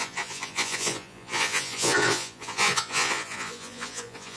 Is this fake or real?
fake